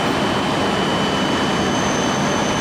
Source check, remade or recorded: recorded